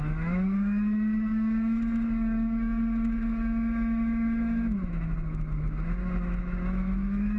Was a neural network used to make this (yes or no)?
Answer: yes